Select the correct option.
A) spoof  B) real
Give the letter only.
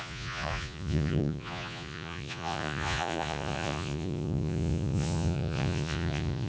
A